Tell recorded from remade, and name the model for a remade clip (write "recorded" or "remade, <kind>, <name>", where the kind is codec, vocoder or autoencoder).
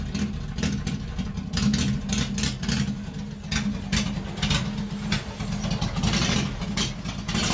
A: recorded